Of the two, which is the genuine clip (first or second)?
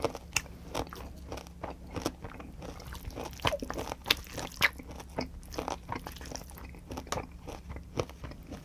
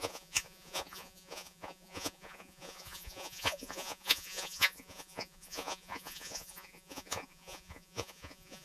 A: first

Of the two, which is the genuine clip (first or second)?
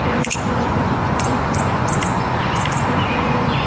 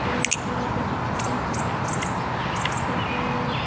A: second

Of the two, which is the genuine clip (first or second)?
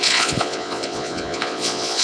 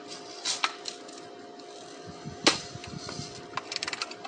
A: second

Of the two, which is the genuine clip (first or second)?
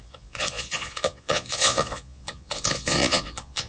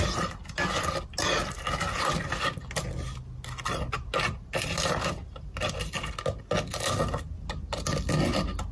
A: second